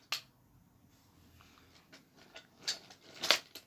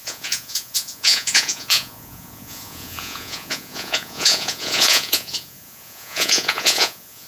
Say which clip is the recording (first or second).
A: first